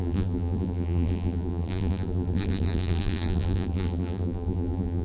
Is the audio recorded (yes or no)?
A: no